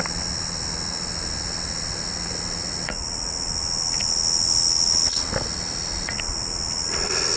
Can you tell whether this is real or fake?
real